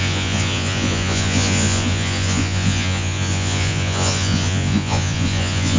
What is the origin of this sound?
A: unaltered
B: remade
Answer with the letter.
B